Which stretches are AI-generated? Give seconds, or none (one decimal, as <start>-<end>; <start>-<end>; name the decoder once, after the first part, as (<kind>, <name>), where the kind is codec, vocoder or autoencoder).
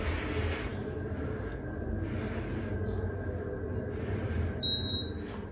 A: none